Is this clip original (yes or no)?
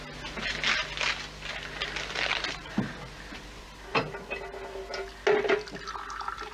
yes